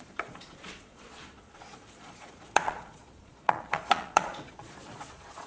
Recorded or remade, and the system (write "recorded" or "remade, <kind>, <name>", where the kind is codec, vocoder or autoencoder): remade, vocoder, Vocos